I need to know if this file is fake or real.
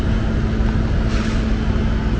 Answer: real